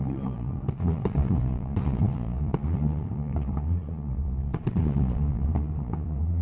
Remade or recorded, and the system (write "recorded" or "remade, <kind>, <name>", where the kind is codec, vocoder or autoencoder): remade, vocoder, Vocos